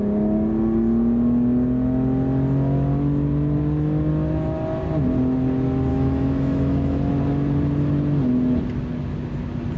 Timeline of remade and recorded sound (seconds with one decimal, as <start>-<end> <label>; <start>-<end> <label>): 0.0-5.9 recorded; 5.9-7.1 remade; 7.1-9.8 recorded